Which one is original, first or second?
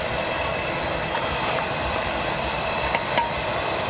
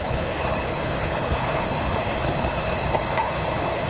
first